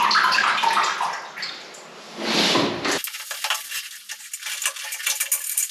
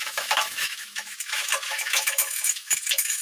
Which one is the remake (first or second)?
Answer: second